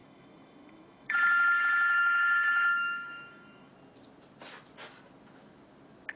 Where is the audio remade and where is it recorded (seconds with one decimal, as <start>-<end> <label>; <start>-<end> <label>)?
0.0-3.7 remade; 3.7-6.2 recorded